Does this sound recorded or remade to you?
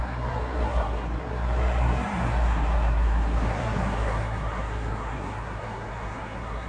remade